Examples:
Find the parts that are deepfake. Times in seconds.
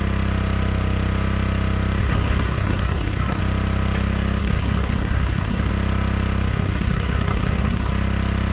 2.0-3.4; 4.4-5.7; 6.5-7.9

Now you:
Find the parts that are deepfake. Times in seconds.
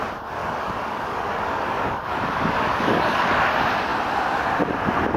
0.4-3.5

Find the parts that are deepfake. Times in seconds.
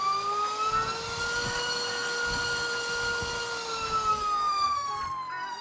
4.1-4.9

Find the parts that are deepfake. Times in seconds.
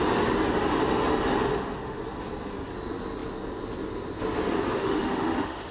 1.5-2.0; 4.8-5.7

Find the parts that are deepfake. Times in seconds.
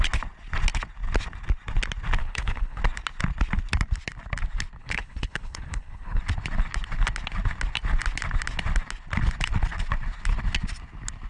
2.2-2.8; 4.8-6.2